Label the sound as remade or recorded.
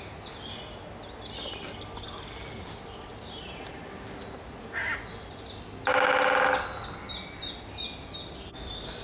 recorded